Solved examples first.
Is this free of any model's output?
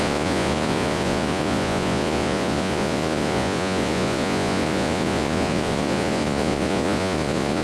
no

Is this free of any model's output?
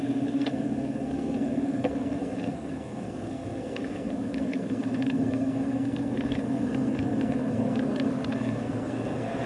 no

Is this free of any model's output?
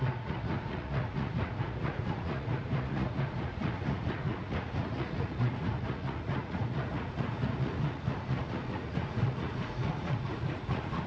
no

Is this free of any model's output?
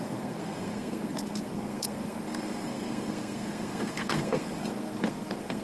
no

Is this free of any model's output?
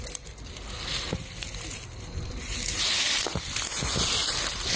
yes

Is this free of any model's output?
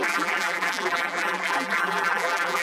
no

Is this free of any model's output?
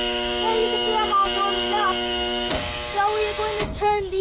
no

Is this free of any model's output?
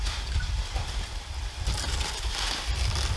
no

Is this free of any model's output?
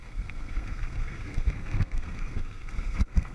no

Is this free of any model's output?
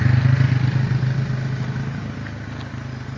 yes